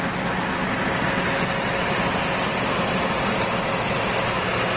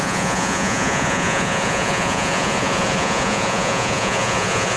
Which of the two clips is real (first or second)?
first